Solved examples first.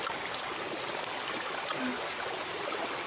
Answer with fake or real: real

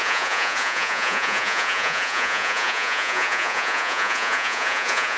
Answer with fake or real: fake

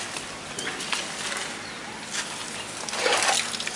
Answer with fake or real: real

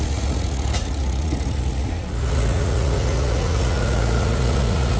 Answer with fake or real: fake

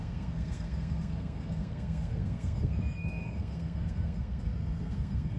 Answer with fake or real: fake